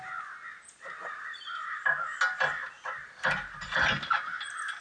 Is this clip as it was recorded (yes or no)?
yes